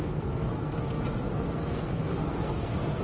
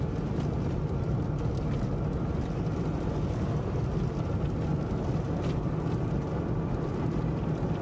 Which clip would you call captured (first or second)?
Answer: second